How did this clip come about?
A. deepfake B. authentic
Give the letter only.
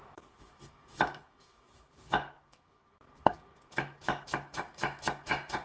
A